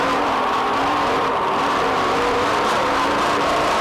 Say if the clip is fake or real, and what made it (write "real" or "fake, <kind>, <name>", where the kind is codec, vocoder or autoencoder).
fake, vocoder, BigVGAN v2